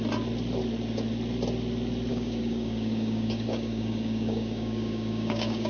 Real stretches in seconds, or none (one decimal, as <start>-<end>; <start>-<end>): 0.0-2.1